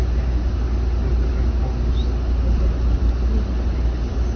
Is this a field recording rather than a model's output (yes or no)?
yes